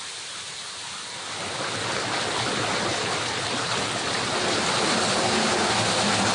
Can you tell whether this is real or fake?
real